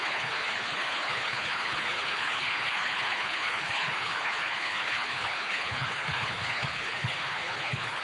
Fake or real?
fake